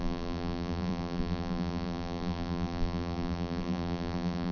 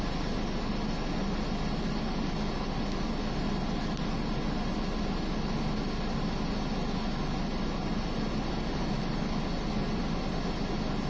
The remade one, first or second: first